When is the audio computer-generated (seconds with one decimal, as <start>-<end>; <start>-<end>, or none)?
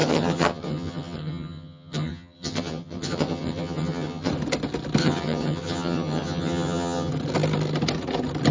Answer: 0.0-4.3; 5.0-7.1